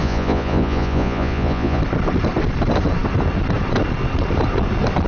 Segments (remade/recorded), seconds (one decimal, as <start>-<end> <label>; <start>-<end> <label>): 0.0-1.8 remade; 1.8-5.1 recorded